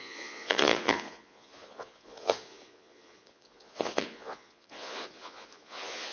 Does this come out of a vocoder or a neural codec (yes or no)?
yes